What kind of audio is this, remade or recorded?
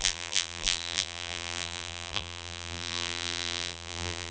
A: remade